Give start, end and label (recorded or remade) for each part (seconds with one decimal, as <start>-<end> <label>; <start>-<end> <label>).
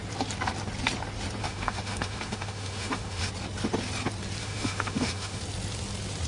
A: 0.0-1.4 recorded; 1.4-3.3 remade; 3.3-4.4 recorded; 4.4-5.4 remade; 5.4-6.3 recorded